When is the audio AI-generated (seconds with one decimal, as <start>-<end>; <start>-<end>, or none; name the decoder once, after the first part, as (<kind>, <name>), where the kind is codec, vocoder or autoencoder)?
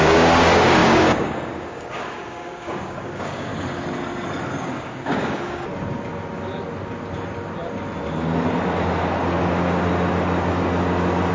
0.0-3.5 (codec, DAC); 4.6-5.7